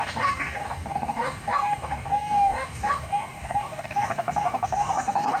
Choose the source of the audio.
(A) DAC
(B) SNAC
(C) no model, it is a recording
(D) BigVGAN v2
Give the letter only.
A